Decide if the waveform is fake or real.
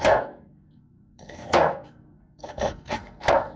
fake